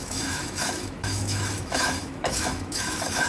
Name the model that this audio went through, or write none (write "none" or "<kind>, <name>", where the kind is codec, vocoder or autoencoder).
autoencoder, DAC-VAE